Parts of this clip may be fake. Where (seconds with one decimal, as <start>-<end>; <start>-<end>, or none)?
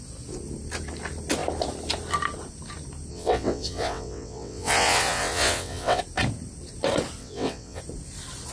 3.1-6.0; 7.2-7.8